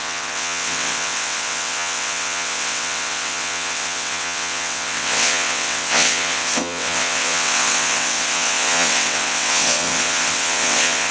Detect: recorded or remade remade